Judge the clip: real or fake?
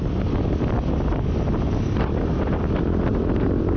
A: real